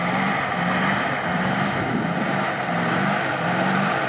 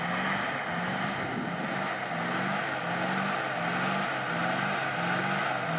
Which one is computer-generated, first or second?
first